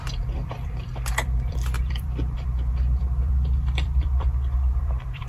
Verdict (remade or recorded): remade